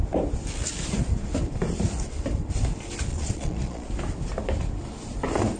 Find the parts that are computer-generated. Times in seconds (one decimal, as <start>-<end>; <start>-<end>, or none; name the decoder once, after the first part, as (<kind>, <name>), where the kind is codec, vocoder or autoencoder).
3.1-3.9 (vocoder, Vocos)